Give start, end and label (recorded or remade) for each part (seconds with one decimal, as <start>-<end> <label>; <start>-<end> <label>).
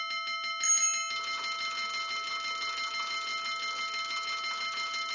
0.0-5.1 recorded